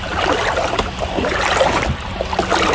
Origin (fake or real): real